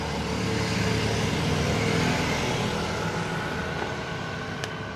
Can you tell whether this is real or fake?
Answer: real